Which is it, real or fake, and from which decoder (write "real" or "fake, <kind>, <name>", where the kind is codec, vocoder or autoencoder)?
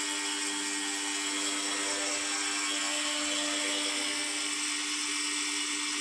real